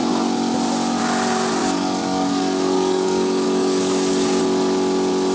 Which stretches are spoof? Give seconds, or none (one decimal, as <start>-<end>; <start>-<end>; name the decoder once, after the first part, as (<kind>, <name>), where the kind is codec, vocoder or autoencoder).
1.6-4.4 (codec, DAC)